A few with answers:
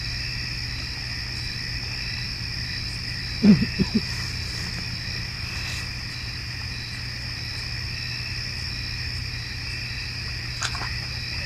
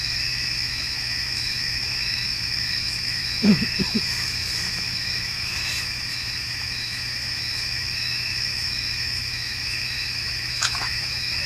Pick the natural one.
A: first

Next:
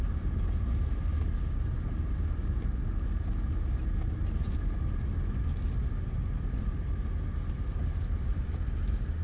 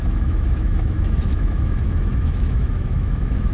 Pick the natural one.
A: first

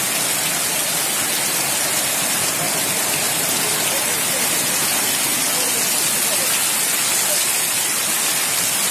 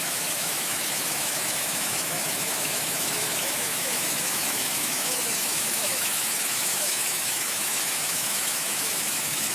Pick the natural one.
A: first